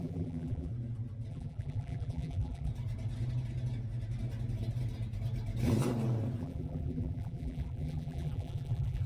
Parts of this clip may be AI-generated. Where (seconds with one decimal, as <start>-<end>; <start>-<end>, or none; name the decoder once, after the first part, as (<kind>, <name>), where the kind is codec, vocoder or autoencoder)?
0.0-0.7 (vocoder, BigVGAN v2); 1.3-2.7; 6.4-9.1